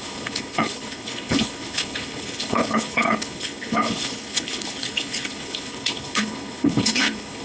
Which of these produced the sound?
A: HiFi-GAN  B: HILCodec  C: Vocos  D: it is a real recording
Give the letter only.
B